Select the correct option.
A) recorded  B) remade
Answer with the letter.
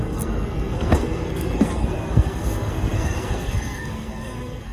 B